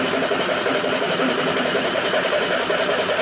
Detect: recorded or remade remade